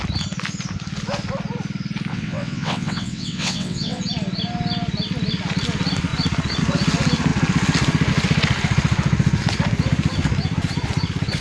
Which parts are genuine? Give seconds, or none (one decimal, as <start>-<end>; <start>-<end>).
0.0-2.1; 4.0-11.4